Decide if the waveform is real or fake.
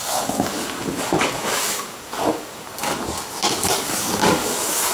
fake